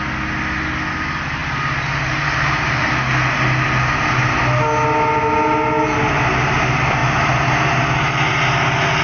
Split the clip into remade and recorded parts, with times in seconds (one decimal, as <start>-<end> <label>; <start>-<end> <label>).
0.0-9.0 recorded